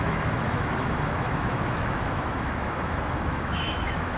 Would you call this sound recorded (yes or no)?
no